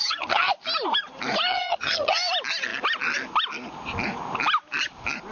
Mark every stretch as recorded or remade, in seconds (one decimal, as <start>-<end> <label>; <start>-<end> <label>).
0.0-0.5 remade; 0.5-1.5 recorded; 1.5-2.2 remade; 2.2-5.3 recorded